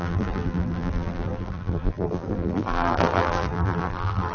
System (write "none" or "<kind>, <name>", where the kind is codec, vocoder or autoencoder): vocoder, BigVGAN v2